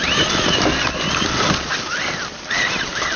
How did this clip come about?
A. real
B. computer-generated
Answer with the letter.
A